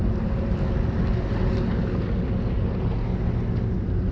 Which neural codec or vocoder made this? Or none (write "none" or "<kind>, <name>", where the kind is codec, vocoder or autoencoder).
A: none